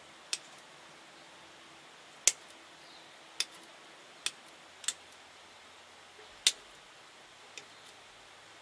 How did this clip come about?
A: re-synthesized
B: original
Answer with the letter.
B